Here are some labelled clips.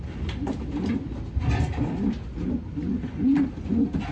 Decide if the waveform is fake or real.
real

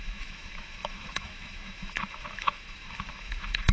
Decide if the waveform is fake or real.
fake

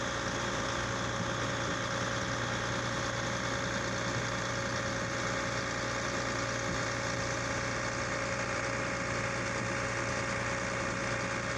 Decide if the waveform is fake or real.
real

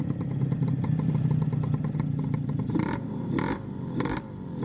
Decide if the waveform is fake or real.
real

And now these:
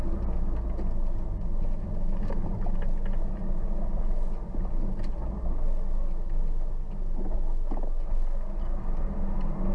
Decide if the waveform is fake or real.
real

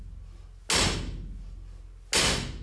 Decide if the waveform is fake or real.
real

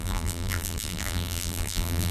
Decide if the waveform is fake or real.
fake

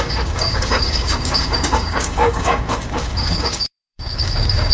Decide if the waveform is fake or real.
fake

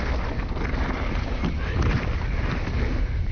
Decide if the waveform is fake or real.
real